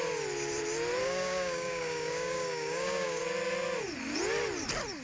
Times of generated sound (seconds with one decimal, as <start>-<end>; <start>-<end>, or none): 1.0-3.2